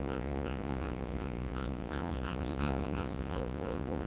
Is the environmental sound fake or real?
fake